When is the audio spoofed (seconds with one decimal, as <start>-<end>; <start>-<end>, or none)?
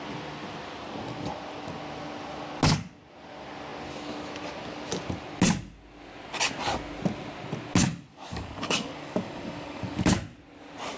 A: 8.1-10.1